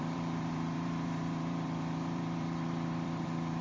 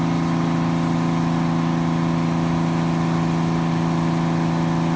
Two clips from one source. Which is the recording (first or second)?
second